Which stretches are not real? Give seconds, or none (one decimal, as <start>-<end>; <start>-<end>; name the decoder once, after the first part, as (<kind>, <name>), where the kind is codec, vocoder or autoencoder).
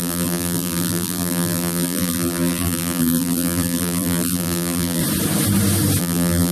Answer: 0.0-5.0 (vocoder, BigVGAN v2); 6.0-6.5